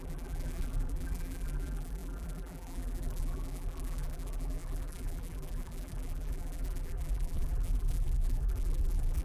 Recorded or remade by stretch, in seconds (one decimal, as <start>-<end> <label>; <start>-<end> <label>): 0.0-9.2 remade